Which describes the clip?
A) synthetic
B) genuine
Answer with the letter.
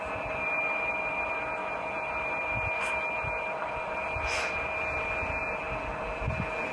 A